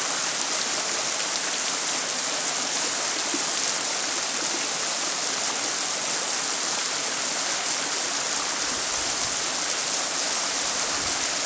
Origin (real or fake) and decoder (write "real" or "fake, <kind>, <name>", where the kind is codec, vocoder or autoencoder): real